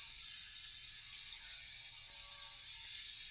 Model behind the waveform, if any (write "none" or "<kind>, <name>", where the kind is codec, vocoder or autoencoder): none